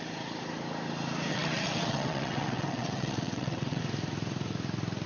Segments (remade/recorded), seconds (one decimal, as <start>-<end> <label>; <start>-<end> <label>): 0.0-1.3 recorded; 1.3-3.8 remade; 3.8-5.1 recorded

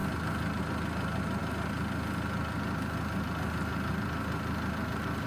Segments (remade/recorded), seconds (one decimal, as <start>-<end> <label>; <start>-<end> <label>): 0.0-0.6 remade; 0.6-5.3 recorded

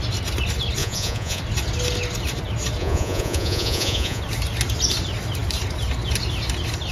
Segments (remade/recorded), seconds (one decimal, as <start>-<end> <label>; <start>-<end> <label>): 0.0-0.8 recorded; 0.8-1.4 remade; 1.4-2.8 recorded; 2.8-4.2 remade; 4.2-6.9 recorded

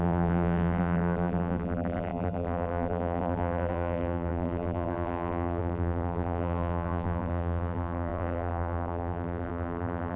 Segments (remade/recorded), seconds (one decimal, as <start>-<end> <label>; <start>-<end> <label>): 0.0-10.2 remade

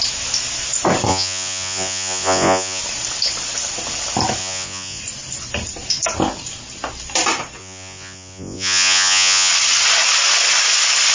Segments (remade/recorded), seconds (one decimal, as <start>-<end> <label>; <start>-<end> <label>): 0.0-1.1 recorded; 1.1-2.8 remade; 2.8-4.4 recorded; 4.4-5.0 remade; 5.0-7.6 recorded; 7.6-9.5 remade; 9.5-11.1 recorded